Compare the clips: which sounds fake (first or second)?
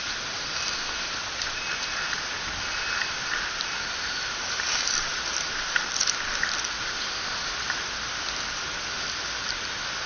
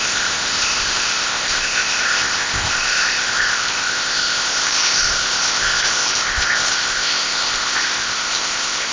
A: second